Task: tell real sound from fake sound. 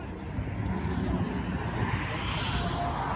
real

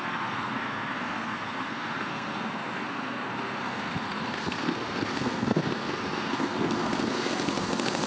fake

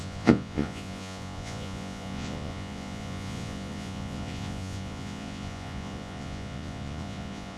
fake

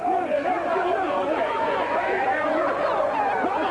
fake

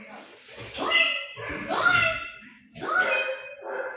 real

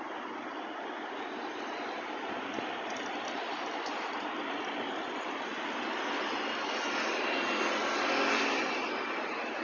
real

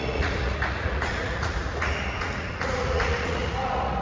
fake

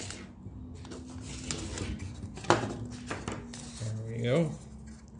real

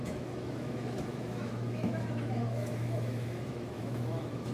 fake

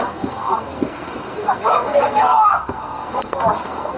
fake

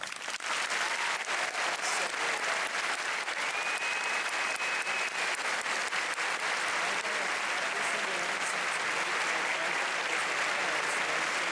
real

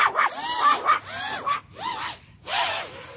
real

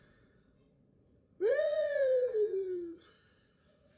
fake